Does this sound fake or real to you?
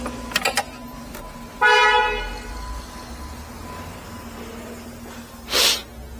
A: real